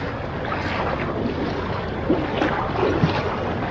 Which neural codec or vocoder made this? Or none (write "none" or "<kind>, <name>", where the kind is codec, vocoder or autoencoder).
none